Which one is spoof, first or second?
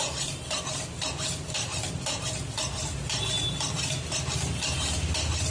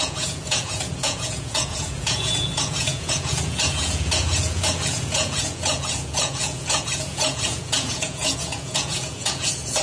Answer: second